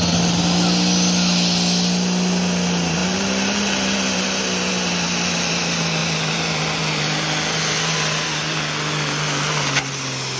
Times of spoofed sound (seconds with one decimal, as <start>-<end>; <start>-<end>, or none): none